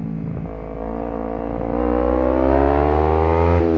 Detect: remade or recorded recorded